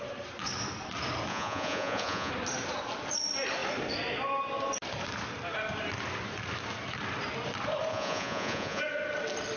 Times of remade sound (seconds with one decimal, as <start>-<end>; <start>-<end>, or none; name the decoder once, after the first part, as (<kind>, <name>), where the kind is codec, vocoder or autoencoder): 1.3-2.3 (vocoder, Vocos); 7.9-8.8